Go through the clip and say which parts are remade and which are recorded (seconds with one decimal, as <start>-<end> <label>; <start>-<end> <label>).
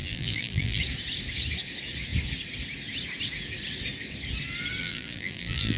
0.0-0.8 remade; 0.8-4.8 recorded; 4.8-5.8 remade